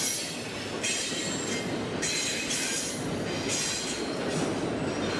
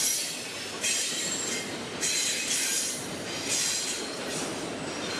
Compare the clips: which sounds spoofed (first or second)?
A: second